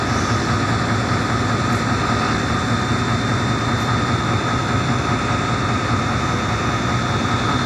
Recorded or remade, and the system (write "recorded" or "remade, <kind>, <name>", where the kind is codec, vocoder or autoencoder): recorded